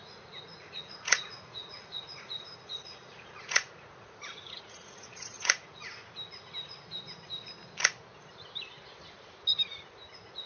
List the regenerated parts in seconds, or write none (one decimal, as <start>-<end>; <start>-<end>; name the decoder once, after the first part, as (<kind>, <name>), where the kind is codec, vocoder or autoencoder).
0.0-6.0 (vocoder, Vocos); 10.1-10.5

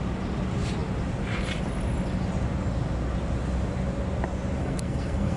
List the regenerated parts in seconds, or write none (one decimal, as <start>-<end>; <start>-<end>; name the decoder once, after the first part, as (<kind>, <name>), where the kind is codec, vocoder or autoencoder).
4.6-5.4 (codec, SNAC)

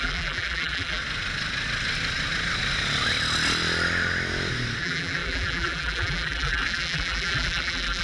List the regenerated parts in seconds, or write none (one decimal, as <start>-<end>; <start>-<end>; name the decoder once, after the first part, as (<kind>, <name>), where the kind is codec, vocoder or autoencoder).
0.0-1.0 (vocoder, BigVGAN v2); 4.8-8.0

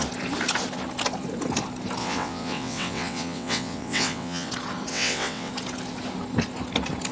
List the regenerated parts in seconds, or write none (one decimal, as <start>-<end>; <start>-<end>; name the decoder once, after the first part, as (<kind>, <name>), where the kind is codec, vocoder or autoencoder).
2.0-4.5 (vocoder, WaveNeXt); 4.9-5.5

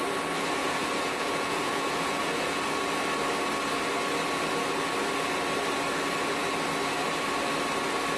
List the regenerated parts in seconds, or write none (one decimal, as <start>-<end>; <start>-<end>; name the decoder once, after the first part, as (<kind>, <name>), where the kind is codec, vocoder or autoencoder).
0.6-2.6 (vocoder, Vocos)

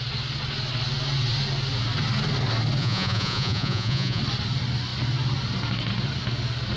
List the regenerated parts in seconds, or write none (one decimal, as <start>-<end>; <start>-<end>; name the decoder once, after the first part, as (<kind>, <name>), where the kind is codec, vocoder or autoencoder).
2.8-4.2 (vocoder, Vocos)

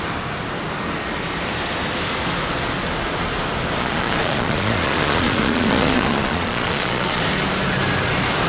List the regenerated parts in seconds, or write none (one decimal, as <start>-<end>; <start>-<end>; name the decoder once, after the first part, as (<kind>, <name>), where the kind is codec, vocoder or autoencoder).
3.8-7.2 (vocoder, Vocos)

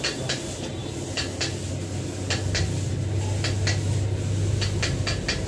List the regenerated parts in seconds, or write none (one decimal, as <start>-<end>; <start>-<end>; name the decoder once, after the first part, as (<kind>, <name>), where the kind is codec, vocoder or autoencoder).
0.8-1.7 (vocoder, BigVGAN v2)